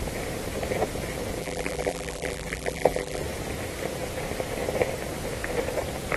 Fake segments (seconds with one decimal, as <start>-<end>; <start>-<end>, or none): 1.4-3.2